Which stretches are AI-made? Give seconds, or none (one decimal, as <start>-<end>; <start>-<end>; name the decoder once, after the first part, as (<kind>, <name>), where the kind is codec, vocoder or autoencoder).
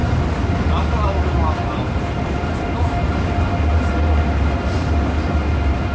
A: none